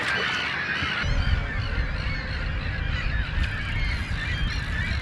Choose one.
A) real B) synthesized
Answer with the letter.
A